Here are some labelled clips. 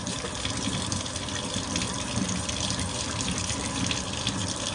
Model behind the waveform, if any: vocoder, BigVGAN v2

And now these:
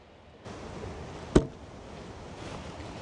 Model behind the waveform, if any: none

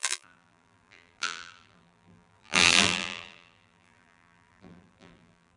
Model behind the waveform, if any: vocoder, BigVGAN v2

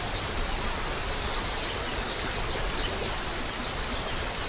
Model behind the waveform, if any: none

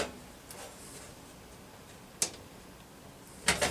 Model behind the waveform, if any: none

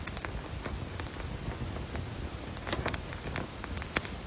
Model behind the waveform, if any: none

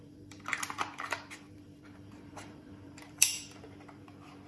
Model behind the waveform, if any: vocoder, BigVGAN v2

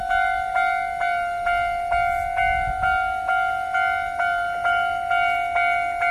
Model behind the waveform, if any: none